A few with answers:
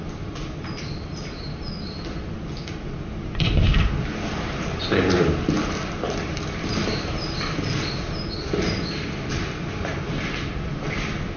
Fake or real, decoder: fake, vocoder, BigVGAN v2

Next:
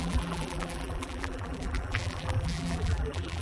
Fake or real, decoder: fake, vocoder, BigVGAN v2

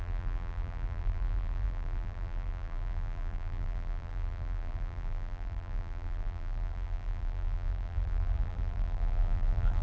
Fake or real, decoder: fake, vocoder, BigVGAN v2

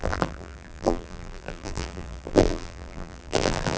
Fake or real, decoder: fake, vocoder, BigVGAN v2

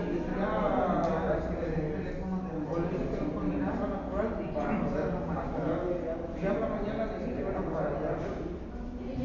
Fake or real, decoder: real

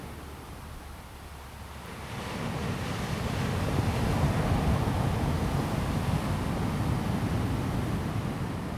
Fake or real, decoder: real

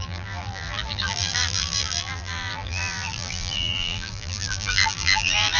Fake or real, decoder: fake, vocoder, BigVGAN v2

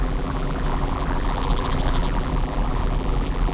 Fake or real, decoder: fake, vocoder, BigVGAN v2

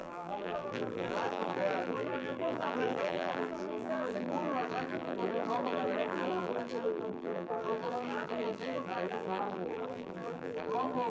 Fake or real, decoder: fake, vocoder, BigVGAN v2